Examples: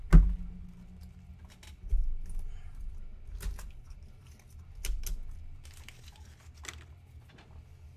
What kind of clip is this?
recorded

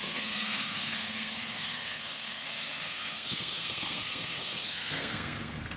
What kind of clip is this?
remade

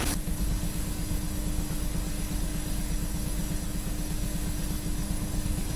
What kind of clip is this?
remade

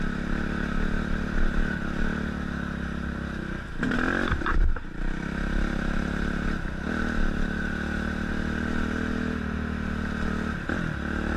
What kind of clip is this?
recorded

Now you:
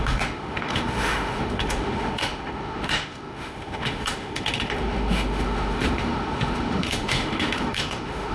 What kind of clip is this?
remade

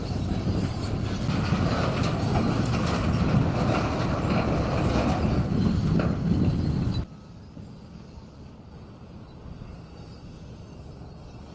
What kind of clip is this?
recorded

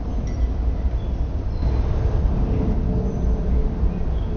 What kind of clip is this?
recorded